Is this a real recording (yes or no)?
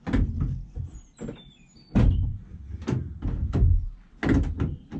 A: yes